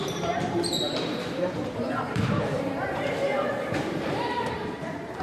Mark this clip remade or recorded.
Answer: remade